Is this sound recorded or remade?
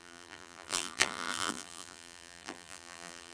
remade